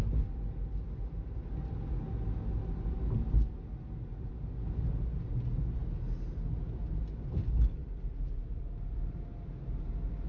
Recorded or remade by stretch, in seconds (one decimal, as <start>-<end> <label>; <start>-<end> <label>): 0.0-7.8 recorded; 7.8-8.6 remade; 8.6-10.3 recorded